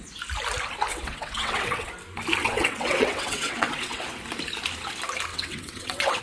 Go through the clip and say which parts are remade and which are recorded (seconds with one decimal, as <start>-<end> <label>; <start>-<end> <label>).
0.0-0.9 recorded; 0.9-1.9 remade; 1.9-2.4 recorded; 2.4-4.0 remade; 4.0-5.3 recorded; 5.3-6.2 remade